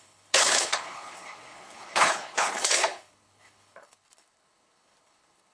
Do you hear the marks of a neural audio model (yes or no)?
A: yes